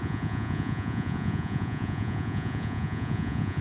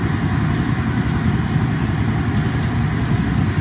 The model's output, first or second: first